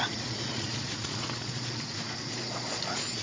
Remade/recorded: remade